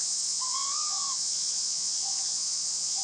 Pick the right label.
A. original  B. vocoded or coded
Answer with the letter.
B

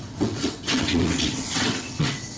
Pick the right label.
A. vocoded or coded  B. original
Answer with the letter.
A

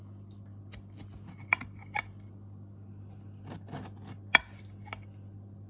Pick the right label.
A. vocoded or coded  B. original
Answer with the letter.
B